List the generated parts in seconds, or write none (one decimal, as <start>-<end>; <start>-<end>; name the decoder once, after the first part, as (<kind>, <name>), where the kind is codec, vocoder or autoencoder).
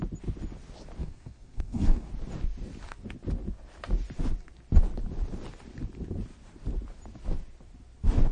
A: 1.0-2.1 (codec, SNAC)